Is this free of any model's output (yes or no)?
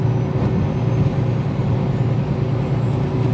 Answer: yes